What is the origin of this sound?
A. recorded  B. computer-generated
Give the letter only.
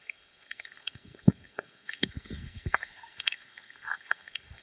B